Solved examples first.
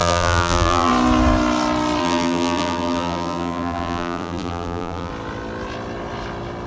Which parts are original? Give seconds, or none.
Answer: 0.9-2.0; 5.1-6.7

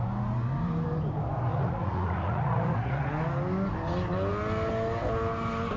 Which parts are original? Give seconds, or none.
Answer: 0.0-1.5; 3.1-5.8

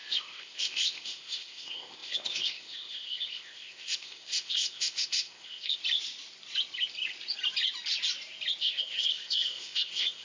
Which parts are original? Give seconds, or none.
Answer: 5.8-8.6

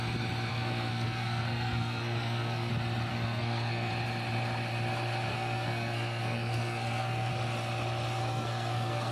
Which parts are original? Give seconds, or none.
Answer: 0.0-0.5; 2.7-3.1; 3.9-5.3; 7.3-8.2

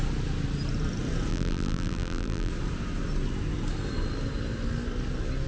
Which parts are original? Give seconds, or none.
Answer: 0.0-1.3; 2.5-5.5

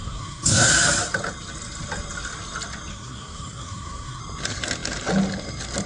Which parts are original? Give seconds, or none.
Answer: 0.7-2.9; 4.2-5.9

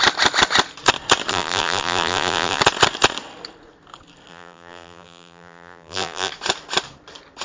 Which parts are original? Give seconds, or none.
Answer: 0.0-1.3; 2.6-4.3; 6.3-7.4